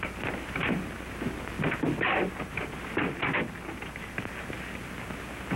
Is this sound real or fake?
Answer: real